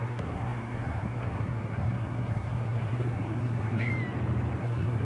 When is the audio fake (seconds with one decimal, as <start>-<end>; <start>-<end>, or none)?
0.0-3.9; 4.6-5.0